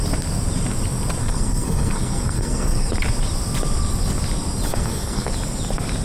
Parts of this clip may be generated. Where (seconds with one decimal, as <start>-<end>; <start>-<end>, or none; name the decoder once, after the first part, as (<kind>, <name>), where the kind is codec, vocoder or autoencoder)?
1.2-2.9 (codec, SNAC); 4.7-5.3